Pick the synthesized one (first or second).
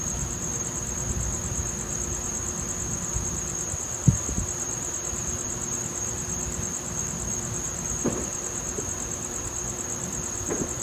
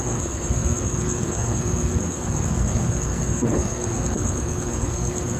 second